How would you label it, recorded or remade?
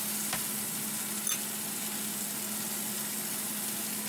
recorded